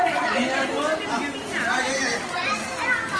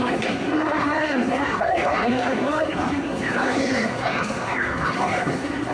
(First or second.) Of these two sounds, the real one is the first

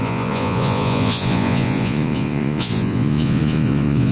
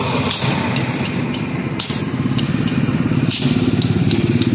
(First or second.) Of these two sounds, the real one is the second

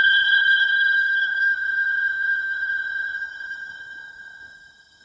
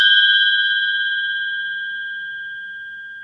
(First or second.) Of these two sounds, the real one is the second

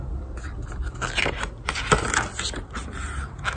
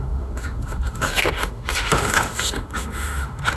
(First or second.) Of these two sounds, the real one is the first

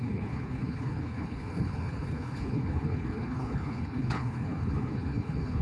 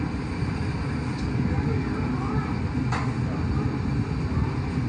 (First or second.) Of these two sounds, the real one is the second